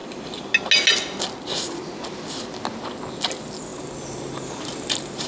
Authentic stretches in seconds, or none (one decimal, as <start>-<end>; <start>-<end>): 0.0-3.7